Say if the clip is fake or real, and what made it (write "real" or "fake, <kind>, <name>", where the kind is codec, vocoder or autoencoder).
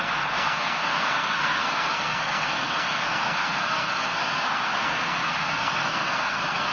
fake, codec, SNAC